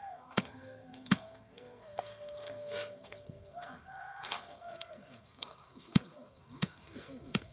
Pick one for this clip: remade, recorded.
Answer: remade